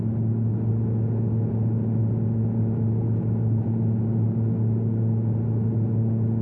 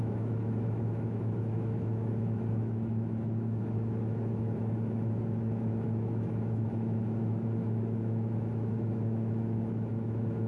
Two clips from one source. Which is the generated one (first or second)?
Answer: second